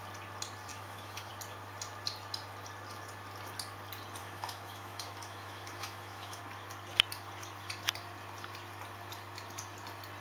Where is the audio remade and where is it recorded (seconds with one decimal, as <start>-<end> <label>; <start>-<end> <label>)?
0.0-0.7 recorded; 0.7-1.3 remade; 1.3-4.2 recorded; 4.2-6.4 remade; 6.4-10.2 recorded